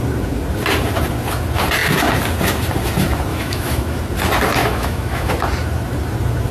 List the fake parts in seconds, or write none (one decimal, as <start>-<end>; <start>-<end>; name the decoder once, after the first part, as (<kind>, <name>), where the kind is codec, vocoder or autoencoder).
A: 3.3-4.0 (autoencoder, DAC-VAE); 4.6-5.3